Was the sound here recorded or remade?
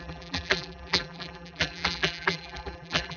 remade